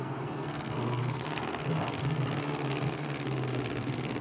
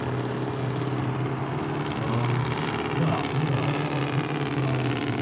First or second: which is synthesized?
first